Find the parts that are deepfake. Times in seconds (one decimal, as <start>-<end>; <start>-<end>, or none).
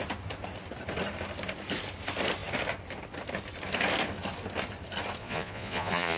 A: 5.2-6.2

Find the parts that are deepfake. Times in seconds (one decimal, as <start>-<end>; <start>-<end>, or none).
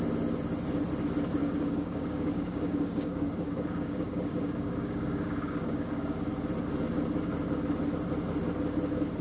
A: 1.4-6.3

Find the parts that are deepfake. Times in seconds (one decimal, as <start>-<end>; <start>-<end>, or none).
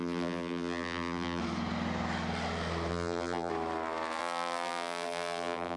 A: 0.0-1.4; 2.9-3.5; 4.2-5.8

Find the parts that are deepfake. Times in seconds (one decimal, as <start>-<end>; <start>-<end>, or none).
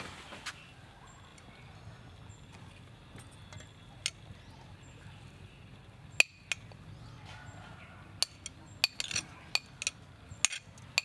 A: none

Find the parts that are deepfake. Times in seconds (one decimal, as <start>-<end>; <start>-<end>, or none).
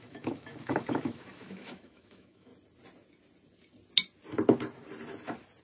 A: 0.0-2.5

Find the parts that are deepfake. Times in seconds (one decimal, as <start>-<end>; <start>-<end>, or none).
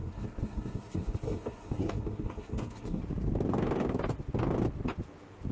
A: 0.0-3.0